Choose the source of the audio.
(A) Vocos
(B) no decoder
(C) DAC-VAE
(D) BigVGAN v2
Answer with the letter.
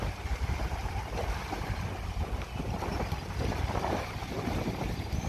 D